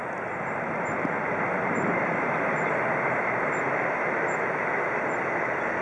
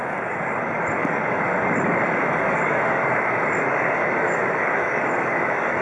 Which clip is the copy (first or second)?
second